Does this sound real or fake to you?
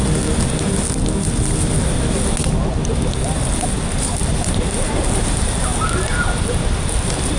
real